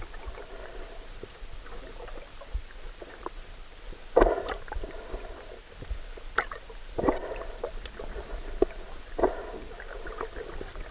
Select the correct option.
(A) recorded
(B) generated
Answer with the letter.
A